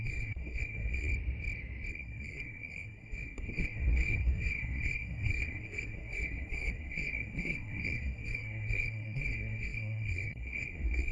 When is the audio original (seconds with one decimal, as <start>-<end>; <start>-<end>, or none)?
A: 1.1-1.9